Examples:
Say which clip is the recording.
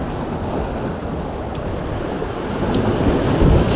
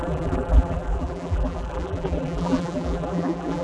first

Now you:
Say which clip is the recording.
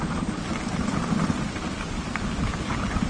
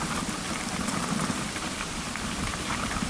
first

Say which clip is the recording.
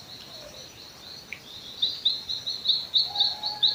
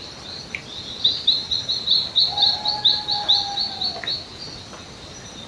first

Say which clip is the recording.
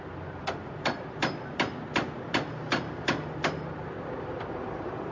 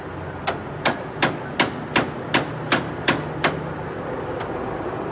second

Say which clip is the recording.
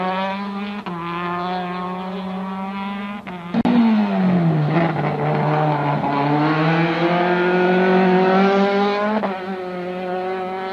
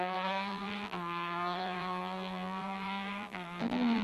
first